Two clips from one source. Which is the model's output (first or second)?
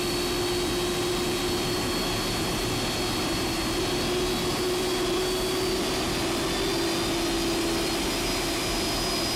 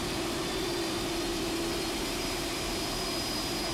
second